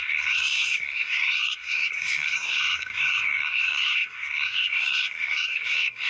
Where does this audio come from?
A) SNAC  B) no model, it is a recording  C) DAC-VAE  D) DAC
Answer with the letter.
A